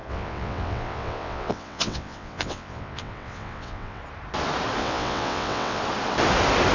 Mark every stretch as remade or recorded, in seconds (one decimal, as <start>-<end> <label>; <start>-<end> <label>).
0.0-4.0 remade; 4.0-4.8 recorded; 4.8-5.8 remade; 5.8-6.7 recorded